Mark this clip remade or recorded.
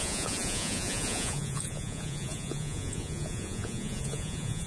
remade